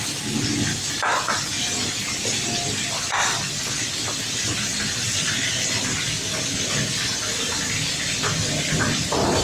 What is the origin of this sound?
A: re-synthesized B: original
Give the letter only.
B